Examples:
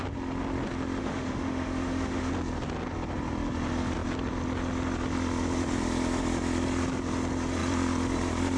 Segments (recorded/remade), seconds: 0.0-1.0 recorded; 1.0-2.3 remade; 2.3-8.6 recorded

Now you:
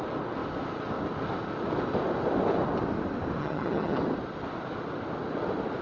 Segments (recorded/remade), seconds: 0.0-3.4 recorded; 3.4-4.0 remade; 4.0-5.8 recorded

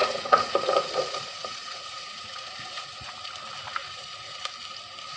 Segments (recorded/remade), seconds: 0.0-3.1 remade; 3.1-3.8 recorded; 3.8-4.4 remade; 4.4-5.2 recorded

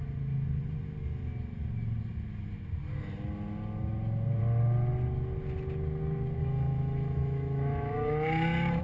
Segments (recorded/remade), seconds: 0.0-6.4 recorded; 6.4-8.8 remade

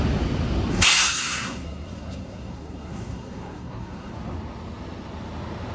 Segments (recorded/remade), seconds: 0.0-0.7 recorded; 0.7-4.1 remade; 4.1-5.7 recorded

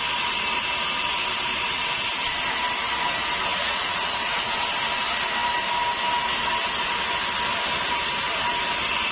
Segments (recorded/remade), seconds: 0.0-3.5 recorded; 3.5-4.4 remade; 4.4-9.1 recorded

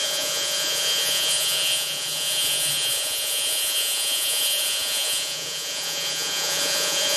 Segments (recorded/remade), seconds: 0.0-7.2 remade